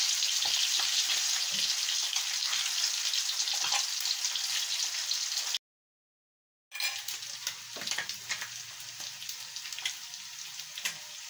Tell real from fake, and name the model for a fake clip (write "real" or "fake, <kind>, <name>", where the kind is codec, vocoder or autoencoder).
real